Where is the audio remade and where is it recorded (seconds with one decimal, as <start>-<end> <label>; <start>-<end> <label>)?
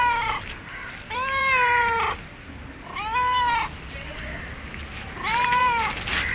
0.0-2.6 remade; 2.6-5.1 recorded; 5.1-6.3 remade